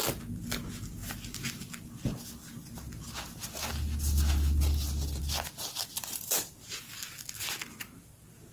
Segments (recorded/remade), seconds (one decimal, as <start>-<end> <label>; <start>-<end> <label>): 0.0-6.0 recorded; 6.0-6.8 remade; 6.8-8.5 recorded